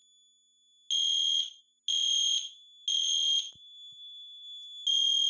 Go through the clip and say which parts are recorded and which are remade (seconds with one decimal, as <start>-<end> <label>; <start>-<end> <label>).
0.0-5.3 recorded